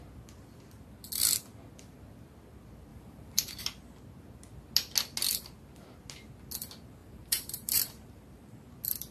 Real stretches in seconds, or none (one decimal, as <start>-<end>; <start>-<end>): 0.0-2.9; 3.6-7.0; 8.4-9.1